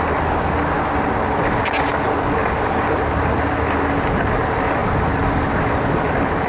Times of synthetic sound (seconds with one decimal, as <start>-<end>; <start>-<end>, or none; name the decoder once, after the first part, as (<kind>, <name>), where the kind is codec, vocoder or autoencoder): none